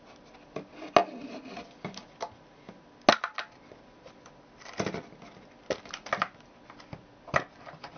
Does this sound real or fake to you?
real